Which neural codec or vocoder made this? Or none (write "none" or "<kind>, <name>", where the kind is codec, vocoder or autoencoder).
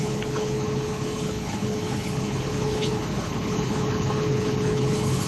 codec, HILCodec